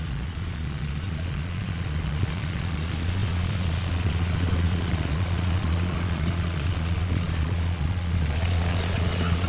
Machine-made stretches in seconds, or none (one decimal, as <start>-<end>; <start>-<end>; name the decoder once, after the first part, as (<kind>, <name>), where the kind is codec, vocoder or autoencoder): 0.0-9.5 (vocoder, Vocos)

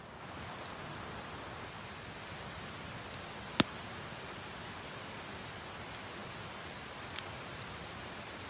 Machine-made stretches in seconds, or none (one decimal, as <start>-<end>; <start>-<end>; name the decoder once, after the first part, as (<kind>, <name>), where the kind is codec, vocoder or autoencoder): none

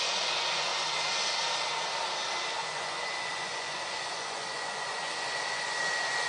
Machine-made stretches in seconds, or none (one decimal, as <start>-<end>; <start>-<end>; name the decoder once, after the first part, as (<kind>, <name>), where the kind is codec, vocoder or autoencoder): 0.0-0.7 (vocoder, Vocos); 2.5-6.3

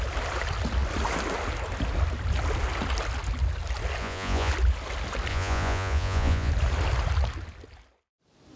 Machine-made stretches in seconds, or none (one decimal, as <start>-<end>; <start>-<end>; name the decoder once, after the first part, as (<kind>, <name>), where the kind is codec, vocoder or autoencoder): 4.0-4.5 (vocoder, Vocos); 5.3-6.5

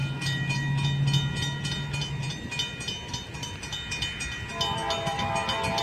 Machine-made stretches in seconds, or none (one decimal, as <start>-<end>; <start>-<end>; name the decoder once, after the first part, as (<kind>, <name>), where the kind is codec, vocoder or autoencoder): none